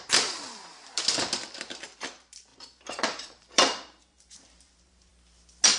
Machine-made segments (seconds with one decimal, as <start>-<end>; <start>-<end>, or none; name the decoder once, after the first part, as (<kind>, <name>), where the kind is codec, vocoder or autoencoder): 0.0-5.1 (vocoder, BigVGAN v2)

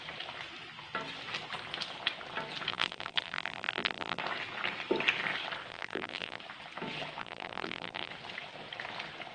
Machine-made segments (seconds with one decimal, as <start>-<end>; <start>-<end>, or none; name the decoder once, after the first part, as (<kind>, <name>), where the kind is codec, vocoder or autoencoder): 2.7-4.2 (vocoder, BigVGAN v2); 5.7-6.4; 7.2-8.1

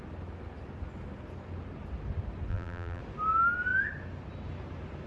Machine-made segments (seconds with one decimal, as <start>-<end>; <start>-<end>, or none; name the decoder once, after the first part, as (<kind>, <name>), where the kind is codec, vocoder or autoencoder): 2.5-3.0 (vocoder, BigVGAN v2)